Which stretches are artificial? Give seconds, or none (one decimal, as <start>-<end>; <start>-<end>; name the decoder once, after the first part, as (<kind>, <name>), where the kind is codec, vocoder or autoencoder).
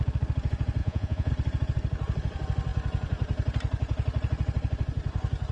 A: 0.8-1.3 (vocoder, Vocos)